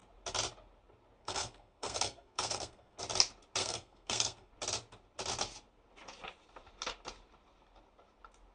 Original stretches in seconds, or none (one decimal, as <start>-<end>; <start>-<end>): 0.0-1.2; 3.0-3.6; 4.5-8.5